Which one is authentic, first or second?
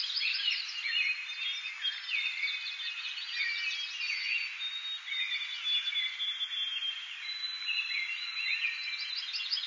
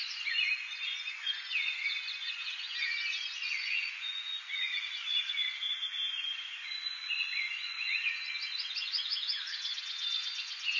first